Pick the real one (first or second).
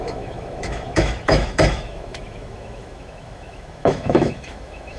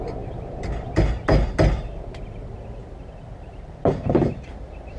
second